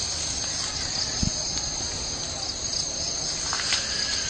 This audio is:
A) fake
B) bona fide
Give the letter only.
B